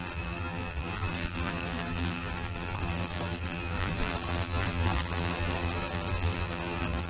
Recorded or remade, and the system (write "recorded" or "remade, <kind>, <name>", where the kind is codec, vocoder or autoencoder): remade, vocoder, BigVGAN v2